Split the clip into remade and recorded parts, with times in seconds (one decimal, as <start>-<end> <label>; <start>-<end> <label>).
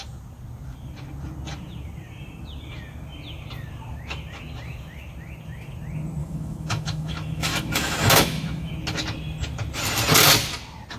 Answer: 0.0-6.2 recorded; 6.2-8.7 remade; 8.7-11.0 recorded